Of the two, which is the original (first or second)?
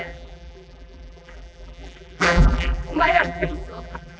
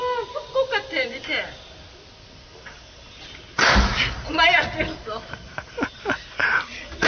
second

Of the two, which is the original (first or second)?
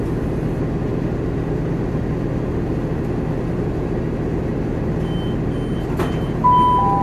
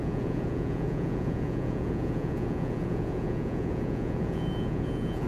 first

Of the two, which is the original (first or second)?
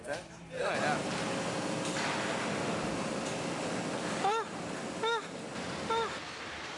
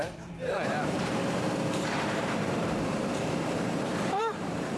first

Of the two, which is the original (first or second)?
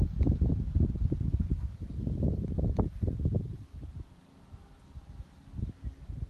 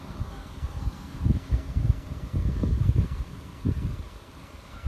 first